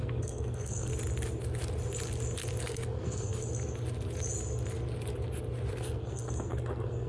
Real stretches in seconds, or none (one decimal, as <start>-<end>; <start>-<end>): 0.9-2.6; 3.4-5.7